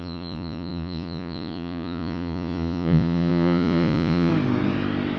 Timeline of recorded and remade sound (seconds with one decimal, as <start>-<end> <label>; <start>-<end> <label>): 0.0-4.3 remade; 4.3-5.2 recorded